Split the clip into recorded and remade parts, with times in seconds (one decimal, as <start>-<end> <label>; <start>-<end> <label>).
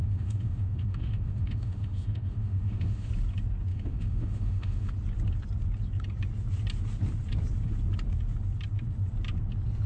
0.0-3.1 remade; 3.1-3.7 recorded; 3.7-4.9 remade; 4.9-9.9 recorded